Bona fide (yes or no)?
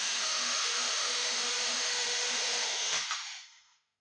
no